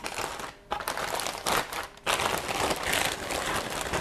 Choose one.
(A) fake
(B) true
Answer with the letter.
B